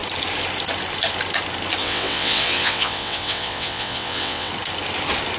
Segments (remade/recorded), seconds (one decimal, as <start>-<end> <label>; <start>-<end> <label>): 0.0-1.8 recorded; 1.8-4.5 remade; 4.5-5.4 recorded